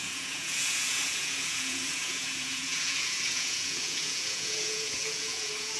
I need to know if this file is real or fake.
fake